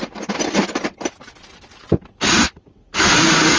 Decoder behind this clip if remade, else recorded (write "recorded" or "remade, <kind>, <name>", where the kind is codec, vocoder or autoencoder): recorded